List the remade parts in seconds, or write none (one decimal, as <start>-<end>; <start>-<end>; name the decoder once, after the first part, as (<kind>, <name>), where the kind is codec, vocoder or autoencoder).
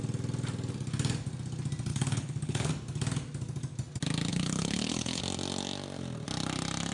1.9-2.7 (codec, HILCodec); 4.3-5.2